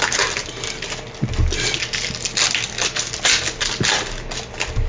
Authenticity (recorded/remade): recorded